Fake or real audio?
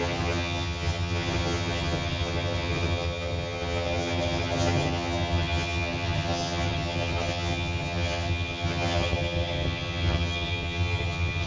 fake